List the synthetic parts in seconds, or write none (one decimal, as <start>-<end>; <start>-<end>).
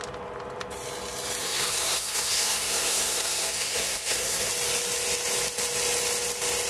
1.4-4.5